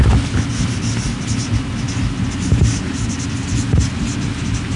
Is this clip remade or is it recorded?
recorded